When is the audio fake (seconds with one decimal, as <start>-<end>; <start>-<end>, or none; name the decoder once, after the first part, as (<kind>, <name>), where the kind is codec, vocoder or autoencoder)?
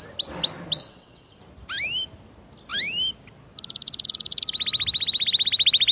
0.8-1.4 (vocoder, WaveNeXt)